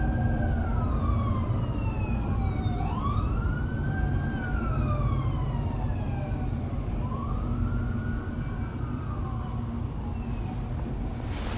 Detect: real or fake real